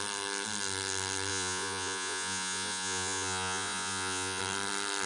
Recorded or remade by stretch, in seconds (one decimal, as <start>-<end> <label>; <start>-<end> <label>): 0.0-1.3 recorded; 1.3-4.4 remade; 4.4-5.1 recorded